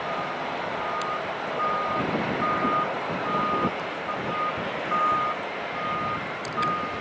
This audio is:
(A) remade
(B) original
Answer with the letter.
B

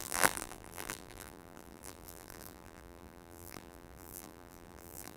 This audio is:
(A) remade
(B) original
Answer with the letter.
A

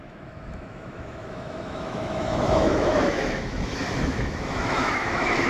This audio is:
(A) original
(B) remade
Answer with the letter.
B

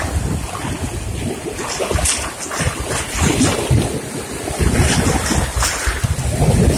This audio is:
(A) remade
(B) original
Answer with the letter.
B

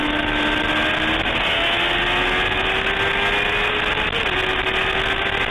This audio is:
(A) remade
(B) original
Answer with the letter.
B